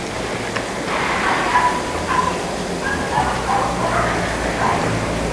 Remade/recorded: recorded